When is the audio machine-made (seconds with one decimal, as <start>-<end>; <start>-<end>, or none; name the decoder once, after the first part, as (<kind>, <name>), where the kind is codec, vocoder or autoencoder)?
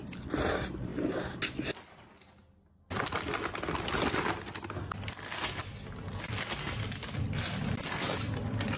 none